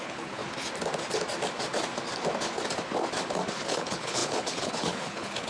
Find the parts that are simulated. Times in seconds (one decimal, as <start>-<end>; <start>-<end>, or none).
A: 0.0-0.4; 3.5-5.5